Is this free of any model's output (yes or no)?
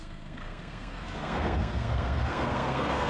no